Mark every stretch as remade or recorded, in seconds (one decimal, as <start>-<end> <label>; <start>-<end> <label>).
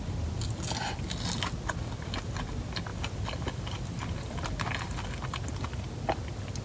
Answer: 0.0-6.6 recorded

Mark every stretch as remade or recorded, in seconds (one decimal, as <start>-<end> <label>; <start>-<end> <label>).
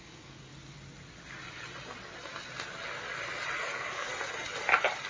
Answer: 0.0-0.5 remade; 0.5-3.6 recorded; 3.6-4.1 remade; 4.1-5.1 recorded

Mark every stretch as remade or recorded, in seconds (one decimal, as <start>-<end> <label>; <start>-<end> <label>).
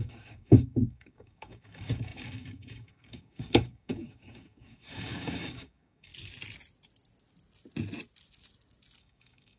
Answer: 0.0-6.1 remade; 6.1-9.0 recorded; 9.0-9.6 remade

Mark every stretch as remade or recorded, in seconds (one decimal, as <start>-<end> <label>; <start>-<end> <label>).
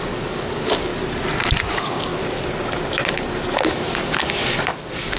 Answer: 0.0-0.9 remade; 0.9-1.7 recorded; 1.7-2.1 remade; 2.1-3.7 recorded; 3.7-5.2 remade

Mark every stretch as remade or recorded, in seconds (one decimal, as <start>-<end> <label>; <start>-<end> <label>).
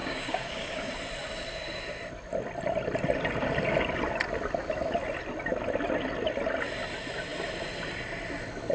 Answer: 0.0-0.9 remade; 0.9-8.7 recorded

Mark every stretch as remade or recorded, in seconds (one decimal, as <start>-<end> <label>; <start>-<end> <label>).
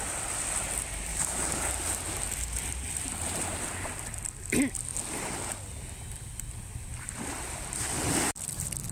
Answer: 0.0-1.1 recorded; 1.1-1.7 remade; 1.7-8.9 recorded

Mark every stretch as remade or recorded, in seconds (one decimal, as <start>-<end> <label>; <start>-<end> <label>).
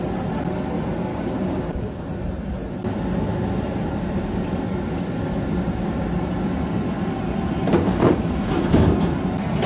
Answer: 0.0-1.1 recorded; 1.1-2.0 remade; 2.0-7.7 recorded; 7.7-8.4 remade; 8.4-9.7 recorded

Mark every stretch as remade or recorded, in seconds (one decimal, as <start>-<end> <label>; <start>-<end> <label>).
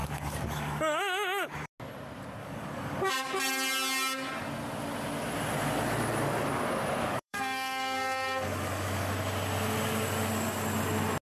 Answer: 0.0-1.7 remade; 1.7-2.4 recorded; 2.4-3.1 remade; 3.1-7.1 recorded; 7.1-9.1 remade; 9.1-11.3 recorded